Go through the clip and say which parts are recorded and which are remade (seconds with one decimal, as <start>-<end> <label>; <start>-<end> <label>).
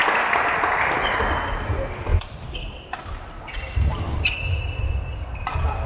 0.0-5.9 recorded